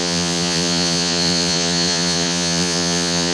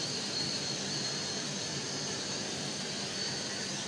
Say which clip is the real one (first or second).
second